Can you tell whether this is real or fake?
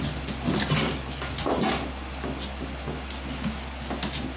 real